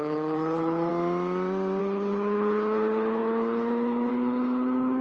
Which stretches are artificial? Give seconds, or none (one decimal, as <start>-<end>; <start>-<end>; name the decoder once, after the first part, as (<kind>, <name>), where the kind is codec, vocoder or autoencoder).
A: 0.0-0.9 (codec, HILCodec); 1.8-5.0